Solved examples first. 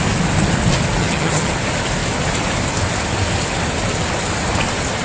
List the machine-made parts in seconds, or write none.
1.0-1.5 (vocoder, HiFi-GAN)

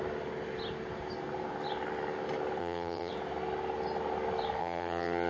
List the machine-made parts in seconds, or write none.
2.6-3.1 (vocoder, HiFi-GAN); 4.6-5.3

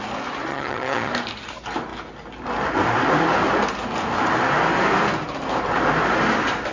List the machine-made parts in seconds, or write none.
0.5-1.1 (vocoder, HiFi-GAN)